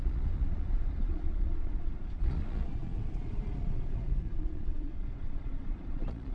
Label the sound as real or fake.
fake